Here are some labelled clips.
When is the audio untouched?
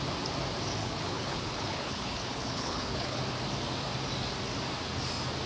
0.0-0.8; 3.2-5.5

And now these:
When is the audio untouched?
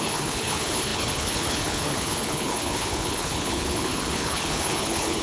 none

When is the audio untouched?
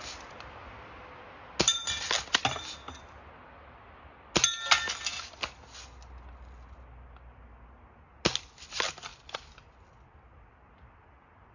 0.0-11.5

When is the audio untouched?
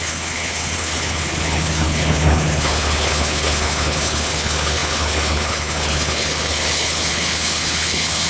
none